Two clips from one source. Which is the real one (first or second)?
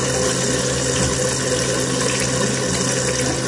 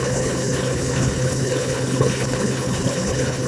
first